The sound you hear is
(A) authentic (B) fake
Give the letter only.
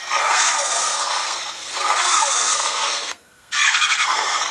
B